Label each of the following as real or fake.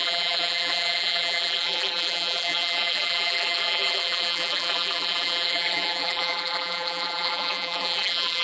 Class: fake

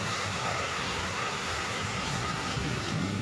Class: fake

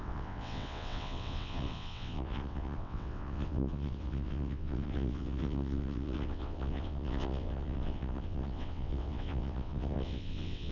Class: fake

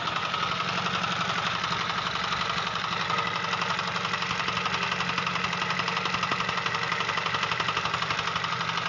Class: real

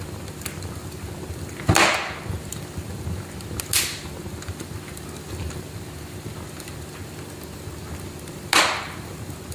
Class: real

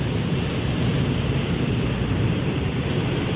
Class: real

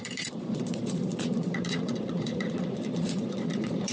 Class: fake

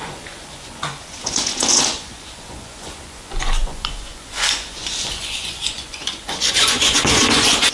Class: fake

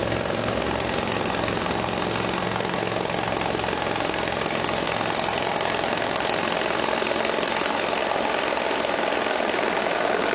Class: real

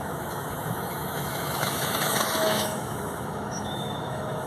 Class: fake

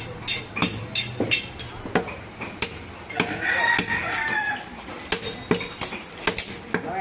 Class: real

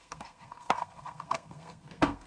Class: fake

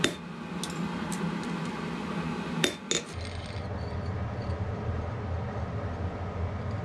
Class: real